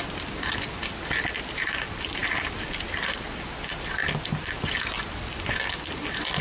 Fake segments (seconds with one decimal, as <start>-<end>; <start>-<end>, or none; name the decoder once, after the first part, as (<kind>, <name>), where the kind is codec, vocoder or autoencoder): none